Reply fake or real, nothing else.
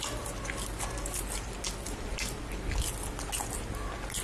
real